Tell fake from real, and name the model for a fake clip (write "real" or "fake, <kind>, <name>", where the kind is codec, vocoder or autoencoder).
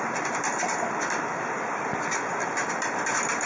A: real